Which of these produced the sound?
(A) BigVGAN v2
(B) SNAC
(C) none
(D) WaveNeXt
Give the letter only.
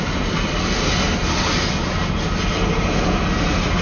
C